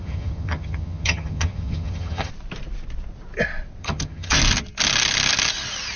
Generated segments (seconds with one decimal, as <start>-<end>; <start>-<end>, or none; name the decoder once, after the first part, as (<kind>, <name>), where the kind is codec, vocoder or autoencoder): 0.0-2.3 (vocoder, HiFi-GAN); 3.8-4.4